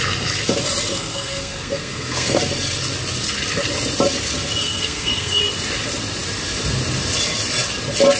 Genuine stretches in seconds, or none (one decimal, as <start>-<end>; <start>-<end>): 0.0-0.9; 2.4-4.6; 5.4-8.2